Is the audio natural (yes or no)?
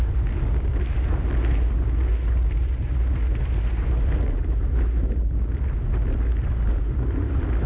yes